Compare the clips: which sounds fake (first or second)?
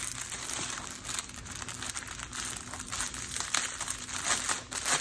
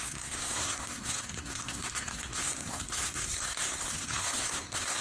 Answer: second